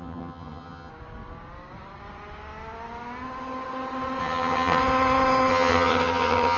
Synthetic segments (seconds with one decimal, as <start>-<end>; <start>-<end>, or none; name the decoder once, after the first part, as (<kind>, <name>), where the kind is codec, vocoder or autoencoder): 0.0-0.9 (vocoder, HiFi-GAN); 4.2-4.8; 5.5-6.6